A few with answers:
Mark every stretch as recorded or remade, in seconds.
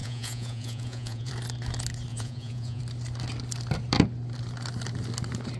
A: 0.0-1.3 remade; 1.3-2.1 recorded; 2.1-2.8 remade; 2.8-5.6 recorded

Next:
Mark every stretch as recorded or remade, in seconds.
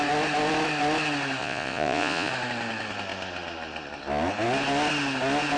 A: 0.0-1.4 recorded; 1.4-2.3 remade; 2.3-5.6 recorded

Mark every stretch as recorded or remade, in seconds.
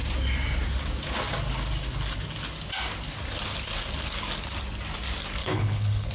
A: 0.0-5.4 recorded; 5.4-6.1 remade